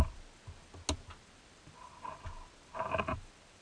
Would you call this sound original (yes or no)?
yes